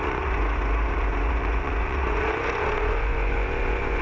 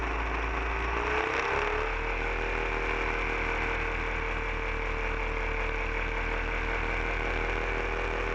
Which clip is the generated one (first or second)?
first